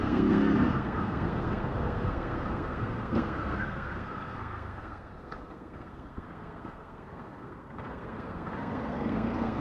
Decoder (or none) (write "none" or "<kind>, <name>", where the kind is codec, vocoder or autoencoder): codec, SNAC